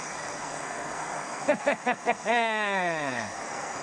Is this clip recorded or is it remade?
remade